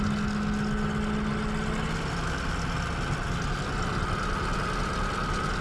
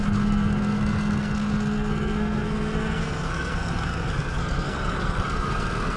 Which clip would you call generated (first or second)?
second